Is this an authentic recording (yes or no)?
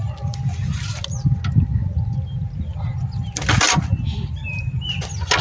yes